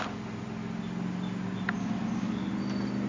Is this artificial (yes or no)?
no